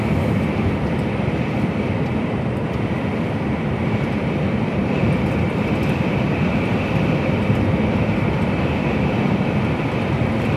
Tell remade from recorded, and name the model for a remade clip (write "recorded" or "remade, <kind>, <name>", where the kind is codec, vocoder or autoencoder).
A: remade, vocoder, BigVGAN v2